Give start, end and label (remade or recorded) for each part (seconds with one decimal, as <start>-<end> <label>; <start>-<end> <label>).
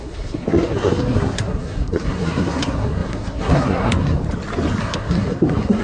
0.0-4.2 remade; 4.2-4.8 recorded; 4.8-5.8 remade